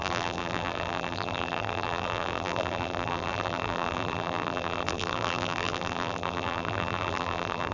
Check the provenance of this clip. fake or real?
fake